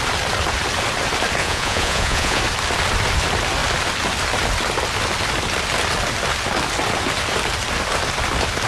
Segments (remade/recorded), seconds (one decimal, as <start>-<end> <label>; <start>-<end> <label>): 0.0-1.4 recorded; 1.4-2.4 remade; 2.4-8.7 recorded